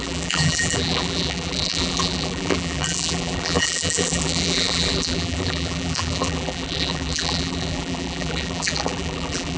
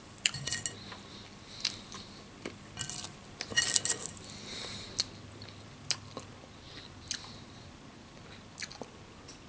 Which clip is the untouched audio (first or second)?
second